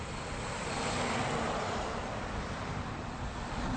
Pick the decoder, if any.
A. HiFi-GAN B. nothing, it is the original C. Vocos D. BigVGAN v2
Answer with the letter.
D